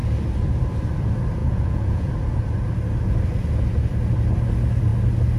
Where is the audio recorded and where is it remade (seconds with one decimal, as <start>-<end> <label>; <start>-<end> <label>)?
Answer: 0.0-1.4 recorded; 1.4-2.1 remade; 2.1-5.4 recorded